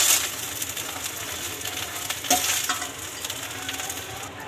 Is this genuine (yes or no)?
yes